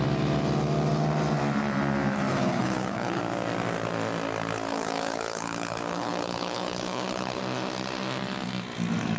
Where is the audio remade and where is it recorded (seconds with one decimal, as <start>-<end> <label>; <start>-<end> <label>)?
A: 0.0-2.3 recorded; 2.3-3.2 remade; 3.2-4.7 recorded; 4.7-7.4 remade; 7.4-9.2 recorded